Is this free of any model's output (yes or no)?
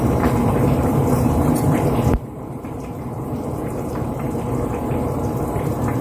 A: no